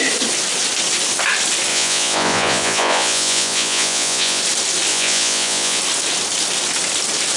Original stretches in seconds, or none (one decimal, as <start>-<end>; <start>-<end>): 0.0-1.7; 4.4-4.9; 5.8-7.4